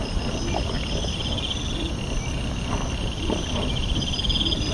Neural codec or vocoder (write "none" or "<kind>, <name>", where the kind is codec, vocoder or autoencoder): none